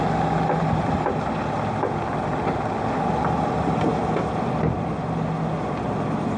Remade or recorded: recorded